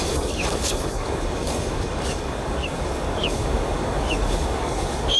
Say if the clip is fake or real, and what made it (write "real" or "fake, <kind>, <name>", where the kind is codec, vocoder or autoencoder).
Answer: fake, codec, DAC